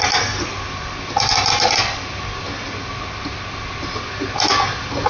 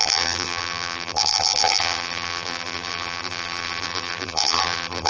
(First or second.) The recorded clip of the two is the first